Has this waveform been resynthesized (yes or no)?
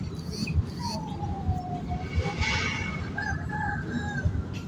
yes